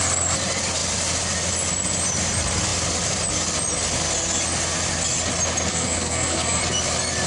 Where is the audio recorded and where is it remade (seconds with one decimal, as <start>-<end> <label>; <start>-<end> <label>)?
0.0-5.7 recorded; 5.7-6.6 remade; 6.6-7.3 recorded